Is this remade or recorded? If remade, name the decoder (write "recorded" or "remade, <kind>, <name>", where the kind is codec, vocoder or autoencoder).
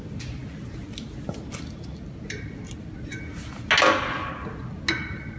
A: recorded